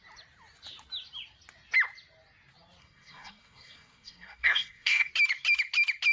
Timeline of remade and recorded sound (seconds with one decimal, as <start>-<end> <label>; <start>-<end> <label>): 0.0-2.8 recorded; 2.8-5.1 remade; 5.1-6.1 recorded